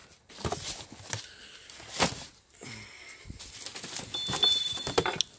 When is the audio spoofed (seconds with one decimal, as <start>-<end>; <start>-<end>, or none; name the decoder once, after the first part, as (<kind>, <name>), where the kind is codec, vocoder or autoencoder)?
0.0-3.2 (vocoder, BigVGAN v2)

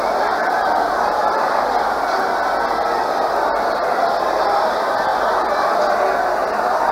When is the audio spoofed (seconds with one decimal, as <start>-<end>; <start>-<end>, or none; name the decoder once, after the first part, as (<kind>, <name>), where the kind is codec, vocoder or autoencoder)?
0.0-1.2 (vocoder, BigVGAN v2); 4.2-5.1

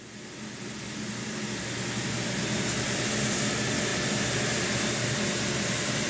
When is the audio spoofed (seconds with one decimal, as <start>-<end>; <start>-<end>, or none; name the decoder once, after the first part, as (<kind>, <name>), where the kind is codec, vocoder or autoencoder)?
none